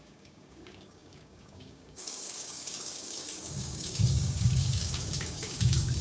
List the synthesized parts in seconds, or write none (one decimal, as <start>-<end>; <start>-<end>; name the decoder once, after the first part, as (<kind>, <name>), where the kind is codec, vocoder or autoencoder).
0.0-6.0 (codec, DAC)